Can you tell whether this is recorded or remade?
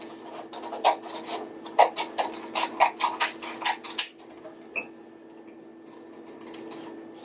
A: recorded